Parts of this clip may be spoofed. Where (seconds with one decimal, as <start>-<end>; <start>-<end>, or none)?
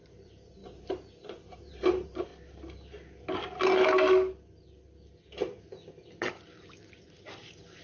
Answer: 0.0-2.3; 6.6-7.8